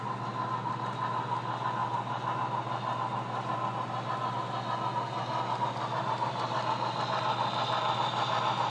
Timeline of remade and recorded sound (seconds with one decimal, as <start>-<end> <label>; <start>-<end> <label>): 0.0-8.7 recorded